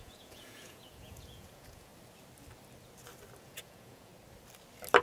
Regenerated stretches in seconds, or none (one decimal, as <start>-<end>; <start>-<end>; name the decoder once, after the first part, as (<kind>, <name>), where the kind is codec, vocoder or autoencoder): 0.0-1.9 (vocoder, Vocos); 3.4-4.1

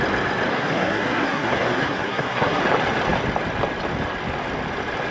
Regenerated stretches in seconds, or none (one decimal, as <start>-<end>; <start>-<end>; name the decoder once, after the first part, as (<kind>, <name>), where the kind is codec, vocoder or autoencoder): 0.5-2.6 (codec, SNAC)

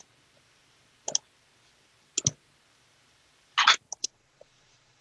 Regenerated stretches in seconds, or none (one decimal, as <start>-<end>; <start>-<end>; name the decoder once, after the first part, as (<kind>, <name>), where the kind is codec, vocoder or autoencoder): 4.0-5.0 (vocoder, Vocos)

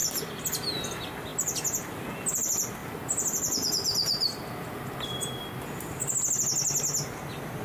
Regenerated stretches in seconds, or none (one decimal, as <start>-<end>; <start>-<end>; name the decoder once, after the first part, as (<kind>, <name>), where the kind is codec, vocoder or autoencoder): 1.3-1.9 (vocoder, BigVGAN v2); 2.8-6.0

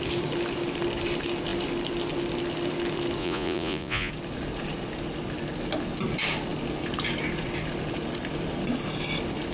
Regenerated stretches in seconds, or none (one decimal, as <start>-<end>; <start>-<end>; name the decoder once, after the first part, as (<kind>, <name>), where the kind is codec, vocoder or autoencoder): 3.2-4.1 (vocoder, Vocos)

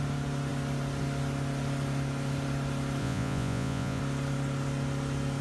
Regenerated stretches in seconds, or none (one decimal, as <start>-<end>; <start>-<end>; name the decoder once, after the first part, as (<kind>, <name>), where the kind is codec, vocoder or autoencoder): 3.0-4.0 (vocoder, Vocos)